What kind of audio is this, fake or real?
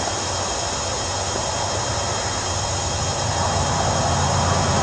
real